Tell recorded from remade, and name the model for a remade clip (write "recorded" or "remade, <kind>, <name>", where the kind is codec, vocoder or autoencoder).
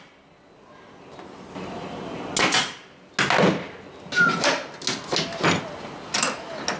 recorded